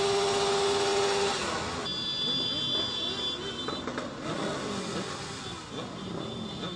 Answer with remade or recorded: recorded